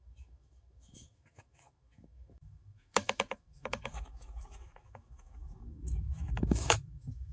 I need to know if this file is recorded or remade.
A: remade